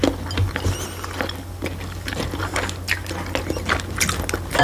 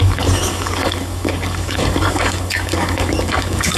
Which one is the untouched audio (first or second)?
first